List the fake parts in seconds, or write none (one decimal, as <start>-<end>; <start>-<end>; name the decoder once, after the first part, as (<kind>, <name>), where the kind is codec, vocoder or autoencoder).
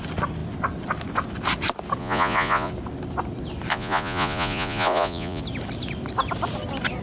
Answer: 2.0-2.7 (vocoder, Vocos); 3.7-5.4